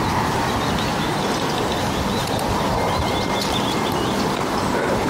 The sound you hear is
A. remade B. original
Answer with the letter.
B